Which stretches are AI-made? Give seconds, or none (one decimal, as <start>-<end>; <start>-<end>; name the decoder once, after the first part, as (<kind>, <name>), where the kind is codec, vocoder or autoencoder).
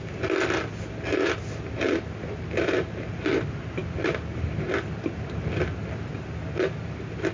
none